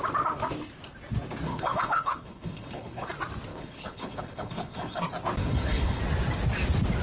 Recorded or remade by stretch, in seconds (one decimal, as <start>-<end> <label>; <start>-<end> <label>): 0.0-1.5 recorded; 1.5-3.1 remade; 3.1-3.5 recorded; 3.5-5.0 remade; 5.0-5.4 recorded; 5.4-6.0 remade; 6.0-7.0 recorded